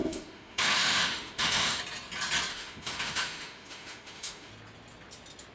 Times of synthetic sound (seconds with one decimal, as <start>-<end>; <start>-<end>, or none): 0.0-1.8; 2.5-4.5